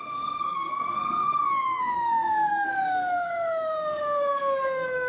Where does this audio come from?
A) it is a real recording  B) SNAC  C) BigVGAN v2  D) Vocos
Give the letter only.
B